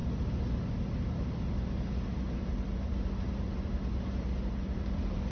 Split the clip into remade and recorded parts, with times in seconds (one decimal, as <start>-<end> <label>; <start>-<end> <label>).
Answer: 0.0-5.3 recorded